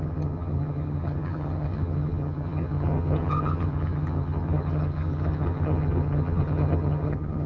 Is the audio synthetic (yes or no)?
yes